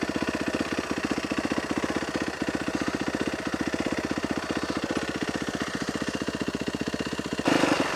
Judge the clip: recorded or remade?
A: remade